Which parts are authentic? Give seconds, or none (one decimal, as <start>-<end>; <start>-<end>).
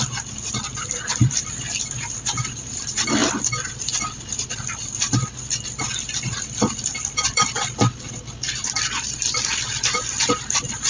none